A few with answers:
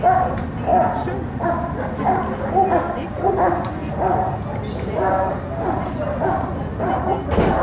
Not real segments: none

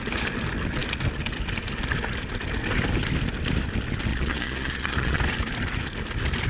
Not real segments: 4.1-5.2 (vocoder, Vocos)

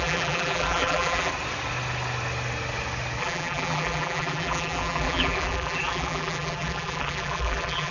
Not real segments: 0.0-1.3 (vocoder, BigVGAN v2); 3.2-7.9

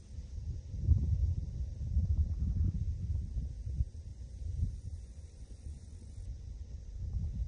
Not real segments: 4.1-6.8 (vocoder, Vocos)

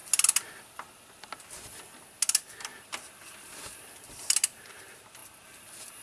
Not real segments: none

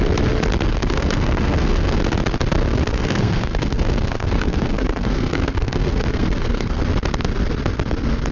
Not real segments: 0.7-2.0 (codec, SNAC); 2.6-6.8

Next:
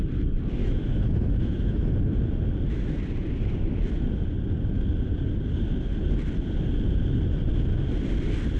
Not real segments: 0.6-1.9 (autoencoder, DAC-VAE)